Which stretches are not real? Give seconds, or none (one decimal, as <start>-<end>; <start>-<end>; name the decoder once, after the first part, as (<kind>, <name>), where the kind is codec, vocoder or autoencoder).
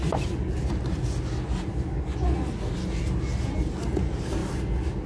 none